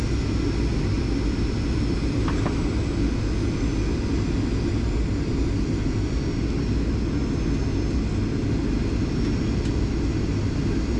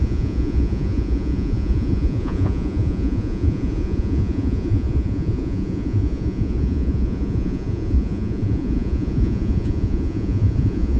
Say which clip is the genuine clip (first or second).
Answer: first